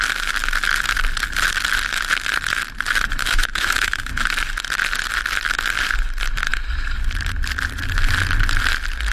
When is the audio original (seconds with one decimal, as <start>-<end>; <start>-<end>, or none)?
0.0-3.2; 4.1-9.1